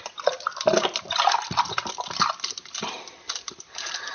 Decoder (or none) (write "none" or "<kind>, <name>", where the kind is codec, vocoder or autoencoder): none